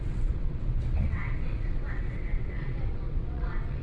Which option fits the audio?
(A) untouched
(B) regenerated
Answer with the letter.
B